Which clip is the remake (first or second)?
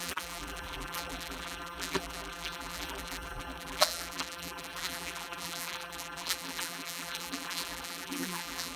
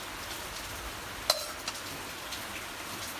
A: first